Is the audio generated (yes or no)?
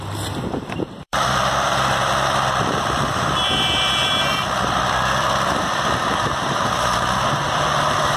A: yes